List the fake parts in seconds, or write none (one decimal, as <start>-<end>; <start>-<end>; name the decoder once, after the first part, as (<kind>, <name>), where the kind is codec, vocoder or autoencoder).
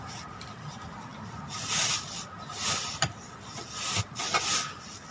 none